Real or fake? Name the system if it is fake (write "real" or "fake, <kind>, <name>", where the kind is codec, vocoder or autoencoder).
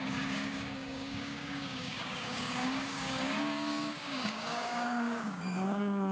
fake, codec, DAC